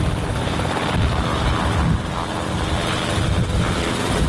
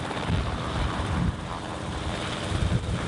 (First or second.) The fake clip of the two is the second